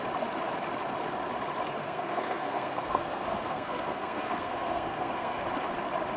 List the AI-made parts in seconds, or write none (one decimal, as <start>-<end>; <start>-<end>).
1.7-5.4